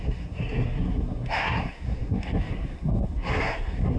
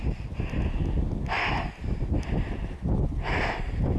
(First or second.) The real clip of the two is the second